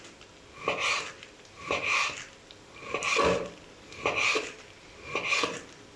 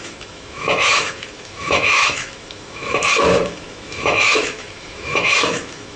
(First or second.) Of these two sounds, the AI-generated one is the second